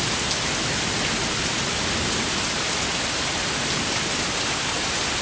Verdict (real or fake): real